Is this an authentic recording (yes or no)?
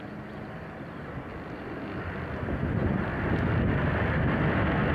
yes